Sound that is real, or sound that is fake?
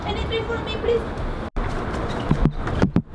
real